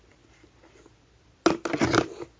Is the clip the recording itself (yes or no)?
yes